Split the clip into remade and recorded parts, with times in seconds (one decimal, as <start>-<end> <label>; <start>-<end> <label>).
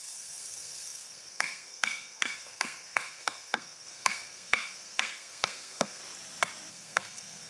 0.0-6.0 remade; 6.0-6.7 recorded; 6.7-7.5 remade